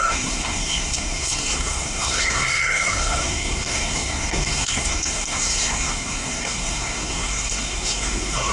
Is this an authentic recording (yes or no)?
no